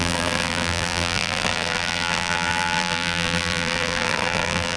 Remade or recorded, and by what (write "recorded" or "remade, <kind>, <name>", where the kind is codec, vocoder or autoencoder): remade, vocoder, BigVGAN v2